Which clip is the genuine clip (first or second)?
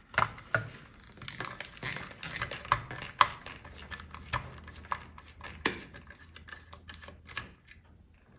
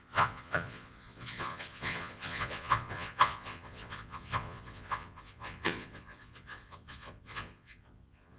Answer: first